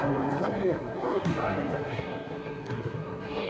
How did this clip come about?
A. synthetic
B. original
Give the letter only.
A